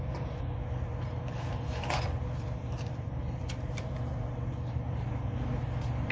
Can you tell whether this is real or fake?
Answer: fake